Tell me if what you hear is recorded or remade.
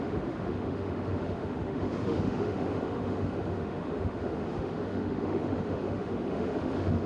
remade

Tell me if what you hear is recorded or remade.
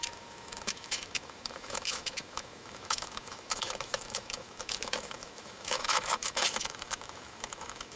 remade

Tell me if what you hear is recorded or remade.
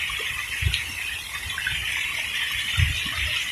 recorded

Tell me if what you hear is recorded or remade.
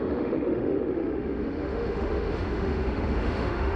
remade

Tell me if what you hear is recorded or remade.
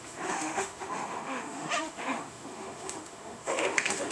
remade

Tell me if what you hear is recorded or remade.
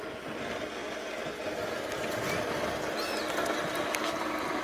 recorded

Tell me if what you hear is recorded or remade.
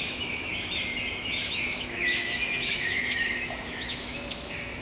remade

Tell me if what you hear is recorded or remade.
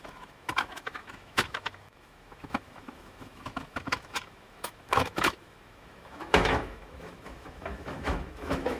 remade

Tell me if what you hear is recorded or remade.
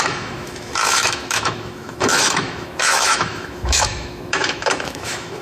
remade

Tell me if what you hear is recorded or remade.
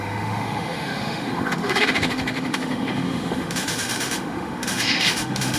remade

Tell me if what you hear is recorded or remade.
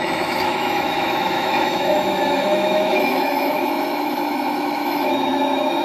remade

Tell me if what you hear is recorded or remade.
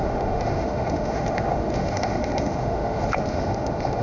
remade